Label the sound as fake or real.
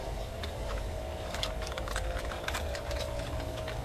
fake